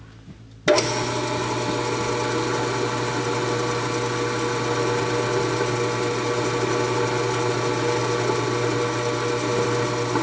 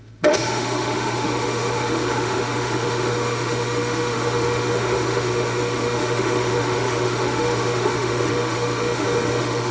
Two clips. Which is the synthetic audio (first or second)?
second